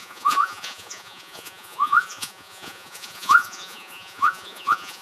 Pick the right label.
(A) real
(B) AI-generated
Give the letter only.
B